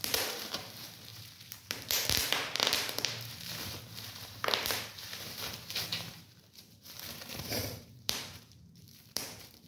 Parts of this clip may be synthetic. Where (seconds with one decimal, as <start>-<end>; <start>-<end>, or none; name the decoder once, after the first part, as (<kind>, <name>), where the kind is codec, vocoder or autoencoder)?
0.0-9.7 (vocoder, BigVGAN v2)